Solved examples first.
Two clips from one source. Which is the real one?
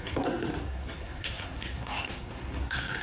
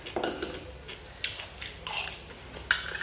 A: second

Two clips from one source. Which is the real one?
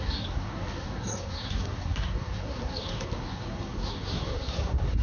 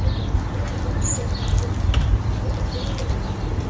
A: second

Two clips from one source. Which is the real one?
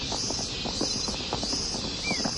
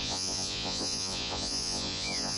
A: first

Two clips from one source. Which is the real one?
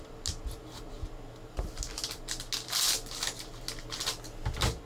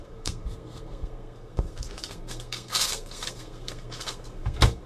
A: first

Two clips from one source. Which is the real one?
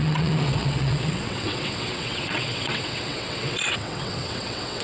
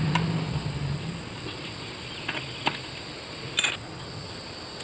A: second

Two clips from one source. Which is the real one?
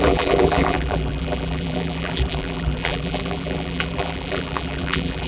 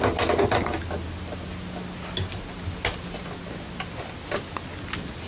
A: second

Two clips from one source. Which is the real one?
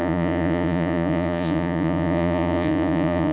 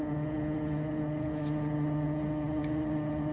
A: second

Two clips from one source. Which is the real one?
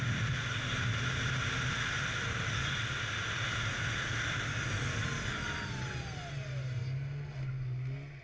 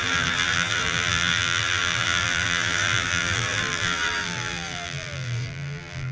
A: first